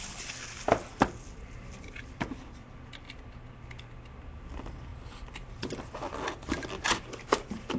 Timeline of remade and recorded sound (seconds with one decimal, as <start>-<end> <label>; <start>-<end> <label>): 0.0-7.8 recorded